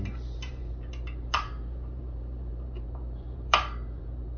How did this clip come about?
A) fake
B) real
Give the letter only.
A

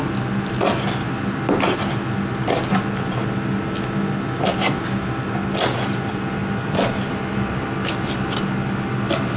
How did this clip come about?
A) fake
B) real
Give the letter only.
B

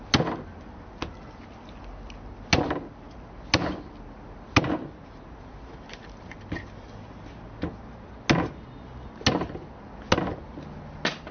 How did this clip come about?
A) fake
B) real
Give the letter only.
B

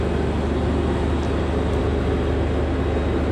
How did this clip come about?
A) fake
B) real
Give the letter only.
B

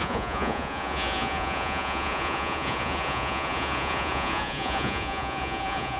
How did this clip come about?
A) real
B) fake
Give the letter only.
B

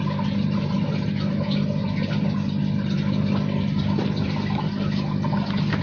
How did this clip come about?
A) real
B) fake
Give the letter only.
A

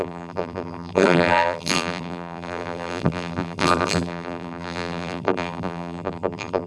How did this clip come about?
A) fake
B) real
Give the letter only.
A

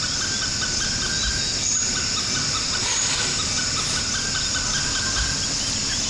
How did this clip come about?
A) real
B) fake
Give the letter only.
A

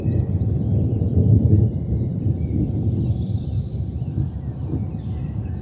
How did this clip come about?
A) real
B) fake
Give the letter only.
B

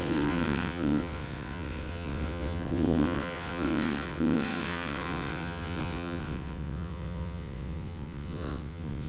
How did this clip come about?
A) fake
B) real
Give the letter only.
A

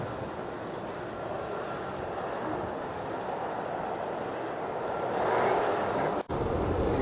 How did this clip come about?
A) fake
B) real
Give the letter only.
B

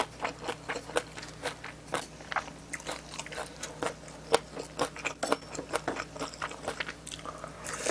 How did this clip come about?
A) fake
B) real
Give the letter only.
B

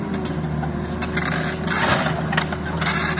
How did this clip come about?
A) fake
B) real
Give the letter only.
B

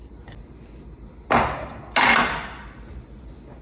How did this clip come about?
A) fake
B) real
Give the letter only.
B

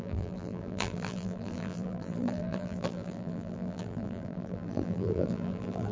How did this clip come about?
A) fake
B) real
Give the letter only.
A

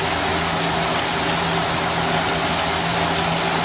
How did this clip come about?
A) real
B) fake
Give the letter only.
A